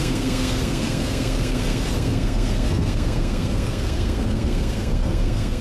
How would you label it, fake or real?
fake